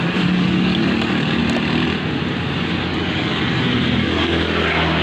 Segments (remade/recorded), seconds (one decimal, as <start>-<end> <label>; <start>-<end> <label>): 0.0-1.4 remade; 1.4-2.8 recorded; 2.8-5.0 remade